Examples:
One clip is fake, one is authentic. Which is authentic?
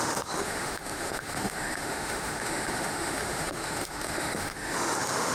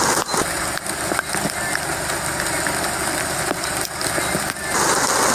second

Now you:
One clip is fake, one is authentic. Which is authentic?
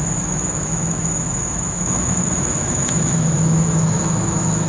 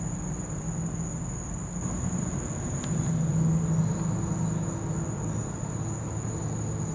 second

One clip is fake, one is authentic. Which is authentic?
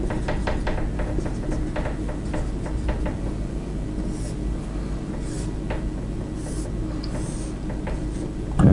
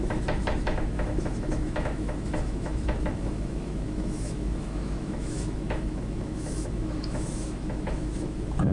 first